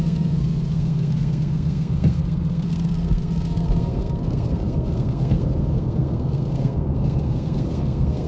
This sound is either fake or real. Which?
fake